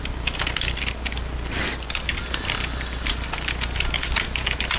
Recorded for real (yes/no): yes